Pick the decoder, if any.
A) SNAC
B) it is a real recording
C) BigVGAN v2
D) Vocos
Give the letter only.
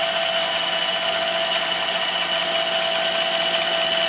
B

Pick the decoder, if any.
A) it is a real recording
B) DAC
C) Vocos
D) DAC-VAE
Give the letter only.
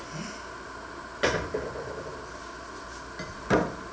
A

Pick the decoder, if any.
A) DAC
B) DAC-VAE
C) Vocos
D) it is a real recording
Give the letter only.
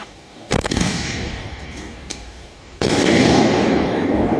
A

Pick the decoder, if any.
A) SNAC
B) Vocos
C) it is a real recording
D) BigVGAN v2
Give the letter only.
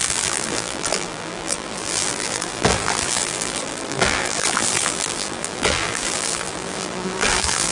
D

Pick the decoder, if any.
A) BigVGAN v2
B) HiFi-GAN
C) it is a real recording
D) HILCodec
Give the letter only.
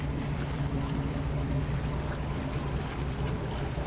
C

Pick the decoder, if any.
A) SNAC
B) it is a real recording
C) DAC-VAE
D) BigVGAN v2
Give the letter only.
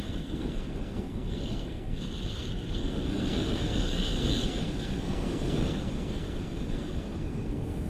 A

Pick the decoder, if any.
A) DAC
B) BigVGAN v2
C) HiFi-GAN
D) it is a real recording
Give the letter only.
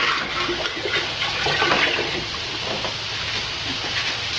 D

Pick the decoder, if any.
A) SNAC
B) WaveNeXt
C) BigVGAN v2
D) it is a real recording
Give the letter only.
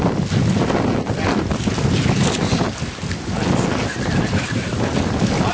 D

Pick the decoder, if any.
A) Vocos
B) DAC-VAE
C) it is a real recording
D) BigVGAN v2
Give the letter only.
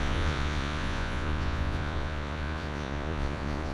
A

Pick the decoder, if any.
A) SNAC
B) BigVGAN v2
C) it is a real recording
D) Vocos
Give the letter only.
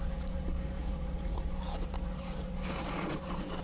D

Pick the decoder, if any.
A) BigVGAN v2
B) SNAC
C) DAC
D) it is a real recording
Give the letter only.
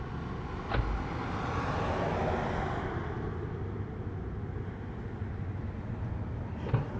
D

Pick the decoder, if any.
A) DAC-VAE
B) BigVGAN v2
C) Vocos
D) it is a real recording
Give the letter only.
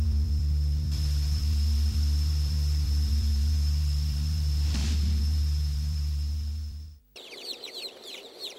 B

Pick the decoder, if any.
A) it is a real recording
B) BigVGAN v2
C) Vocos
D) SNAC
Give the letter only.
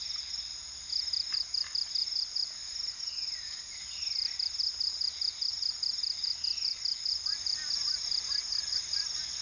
A